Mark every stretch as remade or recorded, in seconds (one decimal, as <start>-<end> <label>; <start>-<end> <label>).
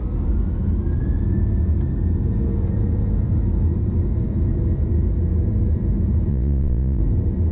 0.0-6.3 recorded; 6.3-7.0 remade; 7.0-7.5 recorded